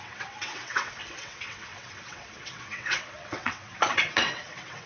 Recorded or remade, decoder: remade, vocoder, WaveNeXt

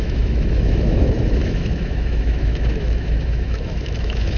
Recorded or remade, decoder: remade, autoencoder, DAC-VAE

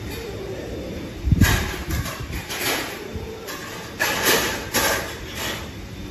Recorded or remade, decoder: remade, vocoder, BigVGAN v2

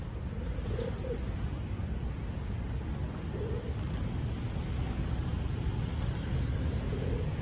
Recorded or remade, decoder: recorded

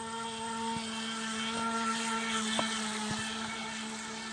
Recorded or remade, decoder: recorded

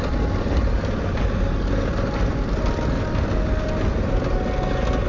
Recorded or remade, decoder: recorded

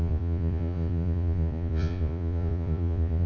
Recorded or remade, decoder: remade, vocoder, Vocos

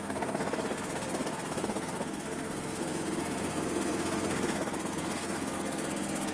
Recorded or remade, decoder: remade, codec, SNAC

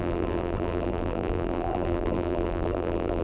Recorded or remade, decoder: remade, vocoder, BigVGAN v2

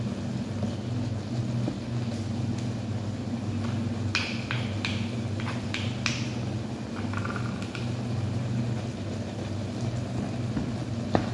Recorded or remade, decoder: recorded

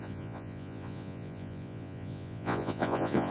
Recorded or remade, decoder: remade, vocoder, Vocos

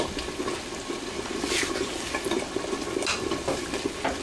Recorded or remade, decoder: recorded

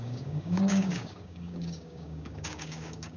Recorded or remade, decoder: remade, codec, DAC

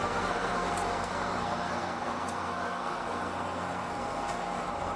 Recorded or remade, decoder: remade, codec, SNAC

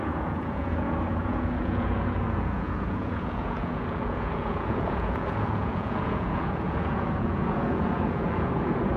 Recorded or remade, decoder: remade, vocoder, Vocos